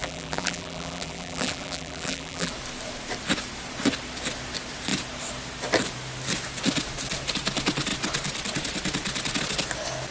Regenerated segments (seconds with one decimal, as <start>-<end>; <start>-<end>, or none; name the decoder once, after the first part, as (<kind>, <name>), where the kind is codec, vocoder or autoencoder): 0.0-2.5 (vocoder, BigVGAN v2)